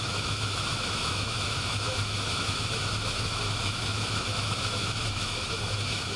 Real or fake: fake